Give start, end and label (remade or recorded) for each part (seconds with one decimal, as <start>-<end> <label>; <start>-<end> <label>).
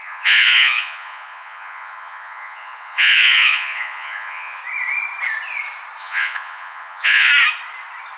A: 0.0-4.6 remade; 4.6-6.0 recorded; 6.0-7.3 remade; 7.3-8.2 recorded